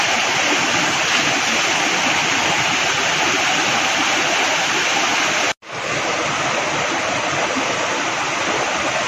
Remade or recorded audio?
recorded